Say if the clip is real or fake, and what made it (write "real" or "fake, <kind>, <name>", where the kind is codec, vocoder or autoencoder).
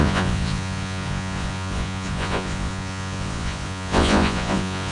fake, vocoder, Vocos